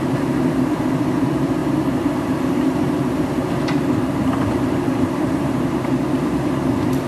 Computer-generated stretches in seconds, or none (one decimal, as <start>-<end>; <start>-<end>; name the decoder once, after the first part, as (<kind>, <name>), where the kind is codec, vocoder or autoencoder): 1.6-5.9 (vocoder, BigVGAN v2)